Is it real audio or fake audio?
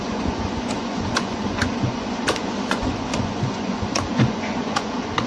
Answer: fake